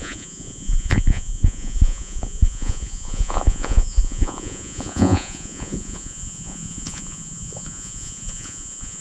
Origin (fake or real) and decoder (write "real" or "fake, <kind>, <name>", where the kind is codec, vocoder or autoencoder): fake, vocoder, Vocos